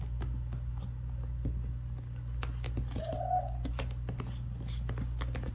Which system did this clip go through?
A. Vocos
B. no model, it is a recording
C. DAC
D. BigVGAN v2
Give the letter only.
B